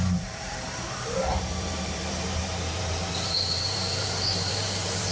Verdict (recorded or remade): remade